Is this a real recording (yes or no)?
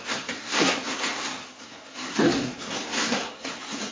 no